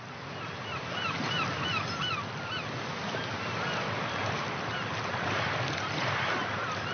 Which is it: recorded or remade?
recorded